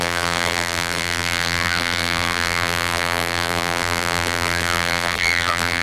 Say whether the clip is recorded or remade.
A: remade